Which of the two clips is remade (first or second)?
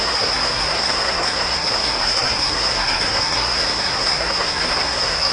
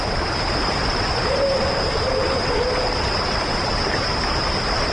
first